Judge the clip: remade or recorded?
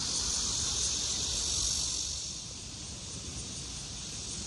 recorded